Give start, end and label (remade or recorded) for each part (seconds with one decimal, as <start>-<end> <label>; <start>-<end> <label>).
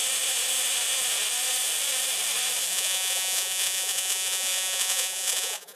0.0-2.7 recorded; 2.7-5.8 remade